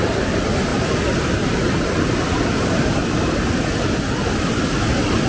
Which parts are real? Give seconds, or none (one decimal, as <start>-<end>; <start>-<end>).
0.0-5.3